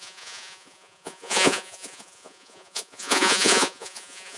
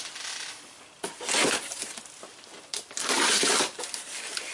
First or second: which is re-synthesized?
first